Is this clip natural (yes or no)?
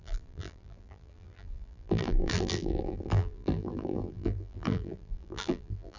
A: no